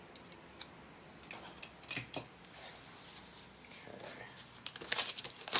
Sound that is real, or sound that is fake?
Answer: real